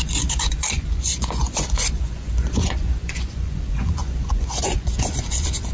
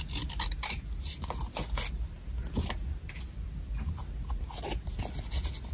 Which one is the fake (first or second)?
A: first